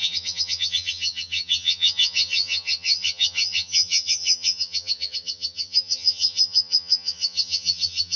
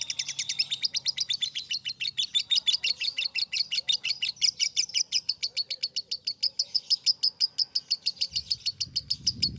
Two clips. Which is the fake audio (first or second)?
first